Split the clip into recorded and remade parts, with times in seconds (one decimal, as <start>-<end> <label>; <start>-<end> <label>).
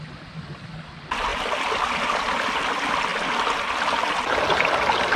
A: 0.0-5.2 recorded